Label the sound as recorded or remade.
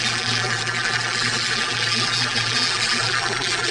remade